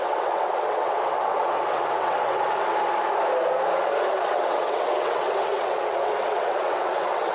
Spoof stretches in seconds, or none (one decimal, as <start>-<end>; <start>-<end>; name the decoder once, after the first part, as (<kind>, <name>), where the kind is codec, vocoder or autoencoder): 0.0-2.7 (vocoder, WaveNeXt); 4.1-7.3